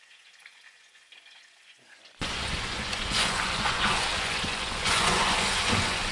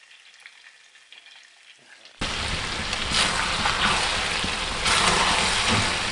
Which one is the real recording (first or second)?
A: second